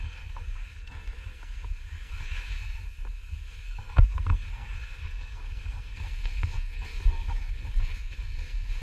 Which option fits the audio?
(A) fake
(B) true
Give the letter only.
A